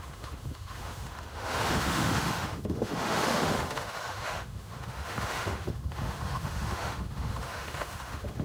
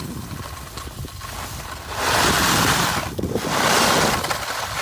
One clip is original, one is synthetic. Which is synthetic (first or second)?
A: first